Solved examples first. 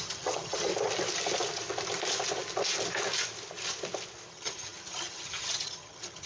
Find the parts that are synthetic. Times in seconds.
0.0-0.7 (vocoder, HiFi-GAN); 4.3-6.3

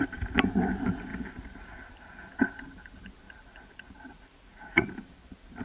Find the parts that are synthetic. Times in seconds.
4.1-4.9 (vocoder, Vocos)

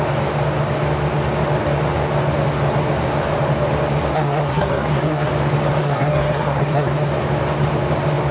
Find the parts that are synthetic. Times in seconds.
4.1-5.3 (codec, SNAC); 5.8-7.1

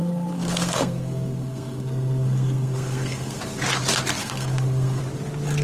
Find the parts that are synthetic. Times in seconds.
0.0-3.4 (codec, SNAC); 4.2-5.0

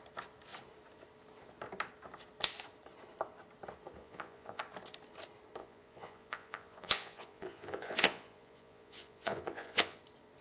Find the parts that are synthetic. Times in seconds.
4.0-4.6 (vocoder, Vocos); 5.6-10.0

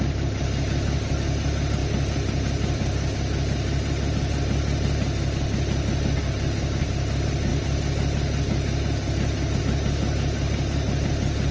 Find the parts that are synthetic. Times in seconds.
none

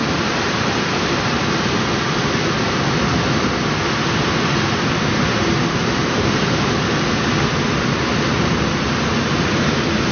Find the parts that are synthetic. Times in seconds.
0.0-1.9 (vocoder, BigVGAN v2); 5.8-6.7

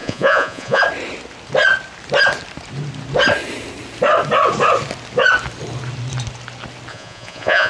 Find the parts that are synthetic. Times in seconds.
0.0-0.8 (vocoder, Vocos); 6.9-7.7